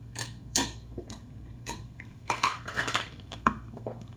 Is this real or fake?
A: fake